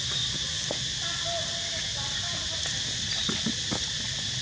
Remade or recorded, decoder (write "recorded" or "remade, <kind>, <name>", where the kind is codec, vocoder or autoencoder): recorded